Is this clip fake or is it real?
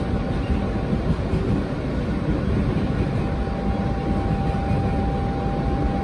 real